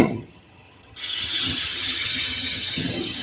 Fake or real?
fake